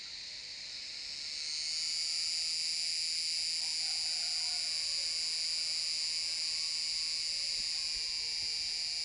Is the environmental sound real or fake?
real